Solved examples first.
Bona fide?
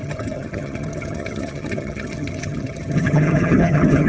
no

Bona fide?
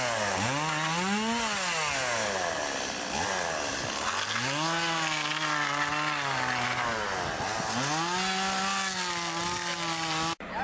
yes